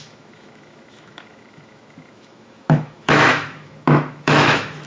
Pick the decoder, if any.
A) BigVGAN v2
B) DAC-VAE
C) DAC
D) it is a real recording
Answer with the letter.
B